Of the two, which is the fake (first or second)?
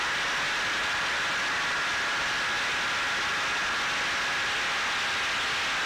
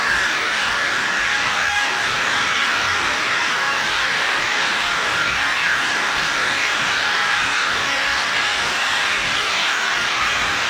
second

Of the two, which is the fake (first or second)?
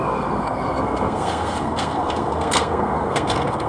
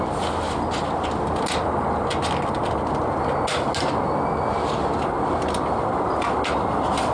first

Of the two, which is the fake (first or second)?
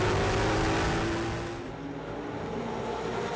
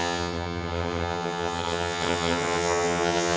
second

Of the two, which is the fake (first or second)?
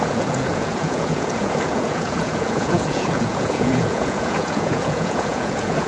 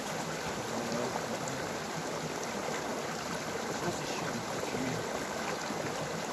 first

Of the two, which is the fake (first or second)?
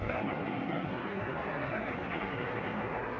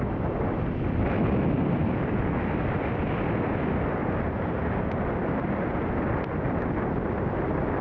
first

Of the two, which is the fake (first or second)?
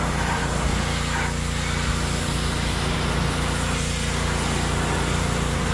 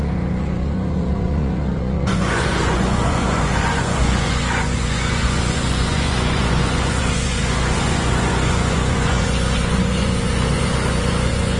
second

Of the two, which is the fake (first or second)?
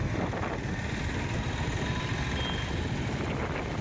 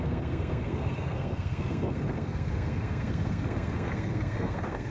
second